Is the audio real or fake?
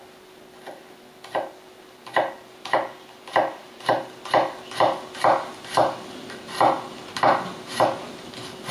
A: real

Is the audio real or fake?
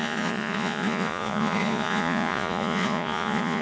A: fake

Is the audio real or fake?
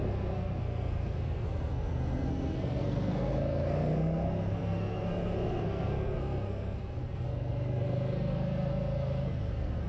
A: fake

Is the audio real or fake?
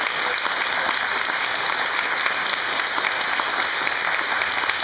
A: real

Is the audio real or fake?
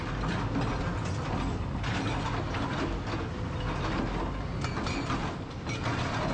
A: real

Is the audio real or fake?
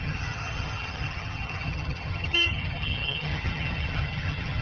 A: fake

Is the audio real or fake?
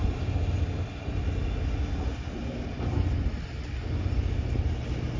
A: real